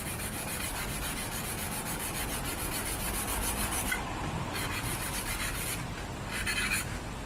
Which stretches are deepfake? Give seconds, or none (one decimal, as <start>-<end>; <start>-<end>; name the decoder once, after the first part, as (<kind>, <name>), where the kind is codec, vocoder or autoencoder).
3.7-6.7 (vocoder, BigVGAN v2)